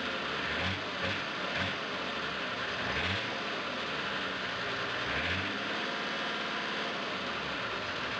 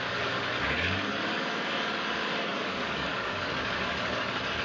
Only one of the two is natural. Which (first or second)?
first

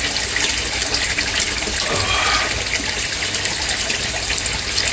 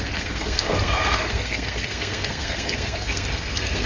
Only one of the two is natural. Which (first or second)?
first